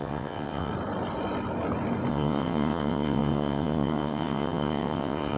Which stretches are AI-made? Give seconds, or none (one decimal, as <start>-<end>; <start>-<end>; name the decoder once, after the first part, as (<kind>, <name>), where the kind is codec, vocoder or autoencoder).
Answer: 0.0-0.7 (vocoder, WaveNeXt); 2.1-5.4